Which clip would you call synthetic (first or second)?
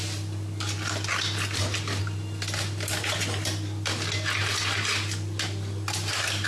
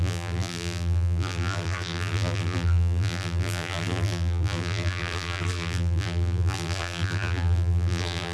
second